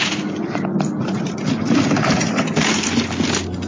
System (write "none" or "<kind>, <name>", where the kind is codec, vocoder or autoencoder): none